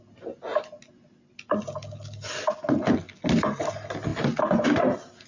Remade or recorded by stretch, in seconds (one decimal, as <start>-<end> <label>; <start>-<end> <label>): 0.0-5.3 recorded

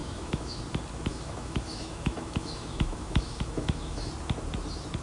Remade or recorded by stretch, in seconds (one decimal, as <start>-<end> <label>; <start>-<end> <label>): 0.0-0.6 remade; 0.6-1.1 recorded; 1.1-4.1 remade; 4.1-5.0 recorded

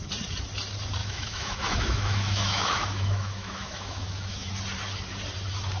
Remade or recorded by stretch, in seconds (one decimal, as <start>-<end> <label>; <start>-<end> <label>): 0.0-1.0 recorded; 1.0-4.5 remade; 4.5-5.8 recorded

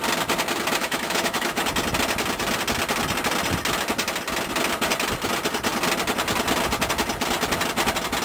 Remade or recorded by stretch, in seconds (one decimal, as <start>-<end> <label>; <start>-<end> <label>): 0.0-0.8 recorded; 0.8-1.6 remade; 1.6-8.2 recorded

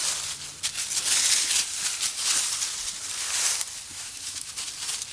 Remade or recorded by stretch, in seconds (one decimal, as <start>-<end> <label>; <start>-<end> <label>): 0.0-3.9 recorded; 3.9-4.5 remade; 4.5-5.1 recorded

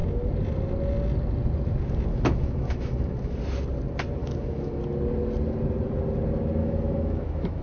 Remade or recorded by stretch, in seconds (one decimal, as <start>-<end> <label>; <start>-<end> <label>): 0.0-2.1 recorded; 2.1-3.4 remade; 3.4-4.2 recorded; 4.2-4.8 remade; 4.8-6.6 recorded; 6.6-7.6 remade

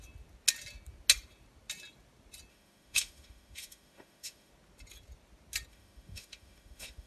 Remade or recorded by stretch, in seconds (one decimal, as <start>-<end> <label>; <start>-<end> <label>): 0.0-2.5 recorded; 2.5-4.5 remade; 4.5-5.7 recorded; 5.7-7.1 remade

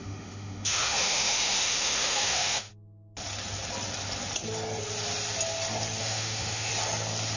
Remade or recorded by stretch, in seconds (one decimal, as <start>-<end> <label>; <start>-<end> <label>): 0.0-2.7 remade; 2.7-6.0 recorded; 6.0-6.7 remade; 6.7-7.4 recorded